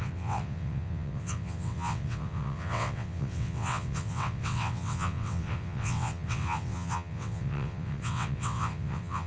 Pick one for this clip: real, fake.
fake